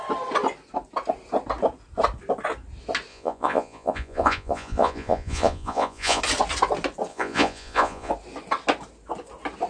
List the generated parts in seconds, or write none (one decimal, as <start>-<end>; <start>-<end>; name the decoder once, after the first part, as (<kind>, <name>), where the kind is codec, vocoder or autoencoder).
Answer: 3.1-6.2 (vocoder, Vocos); 7.1-8.1